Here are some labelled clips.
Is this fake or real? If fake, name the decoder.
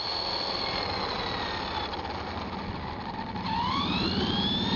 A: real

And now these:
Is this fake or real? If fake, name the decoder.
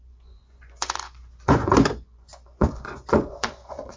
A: fake, vocoder, Vocos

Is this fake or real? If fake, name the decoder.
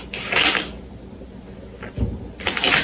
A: real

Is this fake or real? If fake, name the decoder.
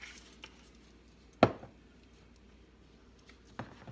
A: real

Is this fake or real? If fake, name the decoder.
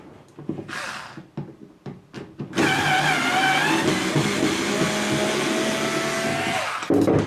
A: real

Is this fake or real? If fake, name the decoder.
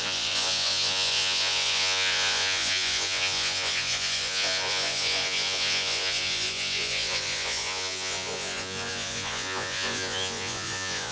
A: fake, vocoder, Vocos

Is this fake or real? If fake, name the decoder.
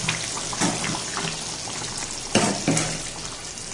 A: real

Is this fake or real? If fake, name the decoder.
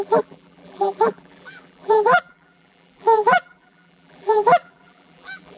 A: fake, vocoder, BigVGAN v2